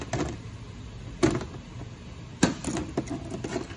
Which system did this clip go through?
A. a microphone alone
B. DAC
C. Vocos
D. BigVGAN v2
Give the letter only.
A